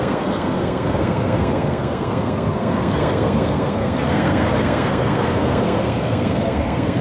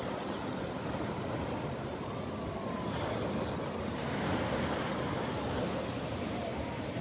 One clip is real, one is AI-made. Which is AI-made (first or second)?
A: first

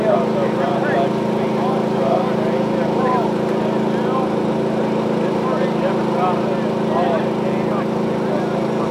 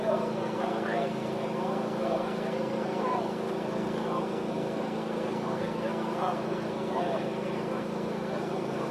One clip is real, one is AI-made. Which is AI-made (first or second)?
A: second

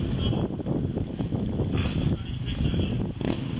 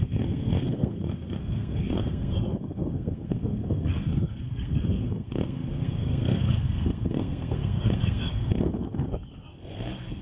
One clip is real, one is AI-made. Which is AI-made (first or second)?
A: second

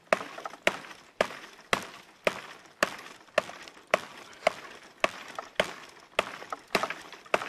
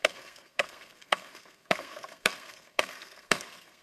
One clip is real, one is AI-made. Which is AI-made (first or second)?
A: second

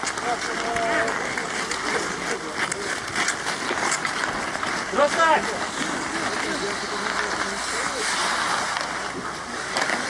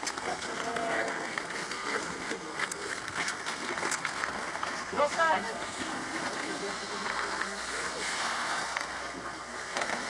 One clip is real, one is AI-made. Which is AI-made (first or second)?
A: second